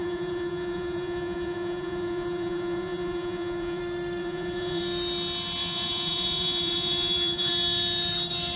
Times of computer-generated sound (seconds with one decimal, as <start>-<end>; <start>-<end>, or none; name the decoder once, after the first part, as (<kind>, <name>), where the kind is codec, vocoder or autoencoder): 0.0-3.8 (vocoder, Vocos); 4.2-4.8; 5.6-7.5